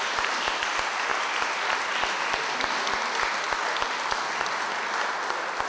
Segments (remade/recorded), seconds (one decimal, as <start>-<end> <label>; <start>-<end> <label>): 0.0-5.7 recorded